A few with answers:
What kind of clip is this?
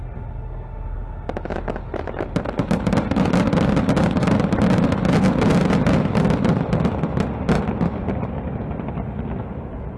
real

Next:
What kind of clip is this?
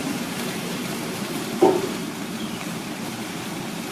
fake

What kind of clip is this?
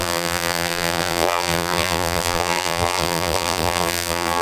fake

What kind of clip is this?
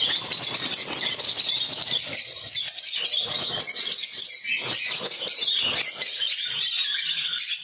real